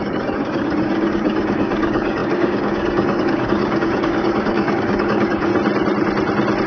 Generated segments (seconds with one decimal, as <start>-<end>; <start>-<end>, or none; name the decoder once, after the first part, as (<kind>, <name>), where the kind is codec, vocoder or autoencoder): 0.0-5.5 (codec, DAC)